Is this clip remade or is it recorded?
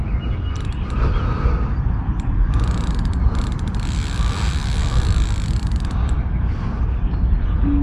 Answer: recorded